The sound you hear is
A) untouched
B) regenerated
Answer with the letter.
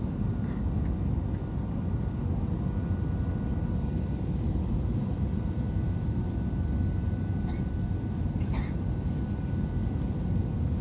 A